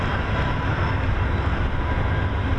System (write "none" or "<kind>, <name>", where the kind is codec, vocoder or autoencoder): none